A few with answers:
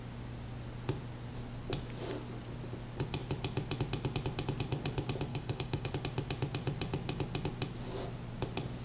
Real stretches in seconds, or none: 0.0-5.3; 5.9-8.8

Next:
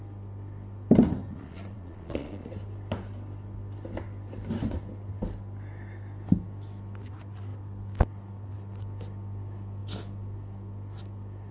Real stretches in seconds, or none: 0.0-1.3; 2.5-11.5

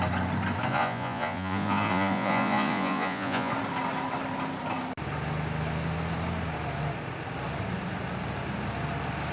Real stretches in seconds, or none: 0.0-0.7; 3.5-9.3